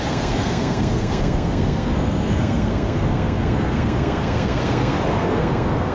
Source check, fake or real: fake